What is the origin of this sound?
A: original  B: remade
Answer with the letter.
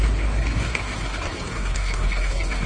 B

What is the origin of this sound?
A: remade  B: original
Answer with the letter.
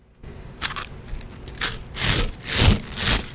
B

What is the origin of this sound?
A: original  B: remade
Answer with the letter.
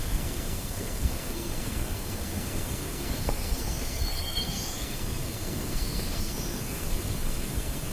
B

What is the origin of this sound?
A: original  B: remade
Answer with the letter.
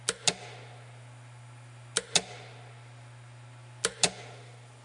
A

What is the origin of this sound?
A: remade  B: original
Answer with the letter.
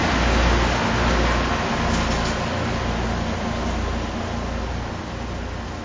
B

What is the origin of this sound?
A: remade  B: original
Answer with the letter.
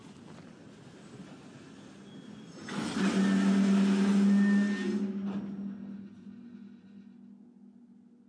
B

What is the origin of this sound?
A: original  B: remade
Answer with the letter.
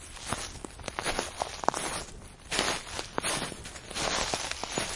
A